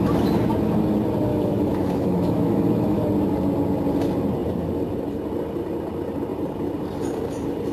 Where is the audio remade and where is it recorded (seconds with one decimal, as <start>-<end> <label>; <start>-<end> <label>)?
0.0-1.3 recorded; 1.3-3.0 remade; 3.0-7.7 recorded